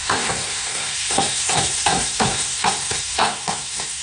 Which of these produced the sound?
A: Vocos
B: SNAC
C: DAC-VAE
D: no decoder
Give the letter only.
B